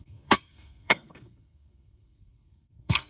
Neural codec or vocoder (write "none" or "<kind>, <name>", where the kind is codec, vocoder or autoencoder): codec, SNAC